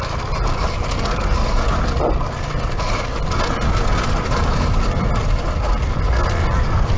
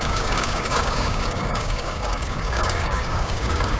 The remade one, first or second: second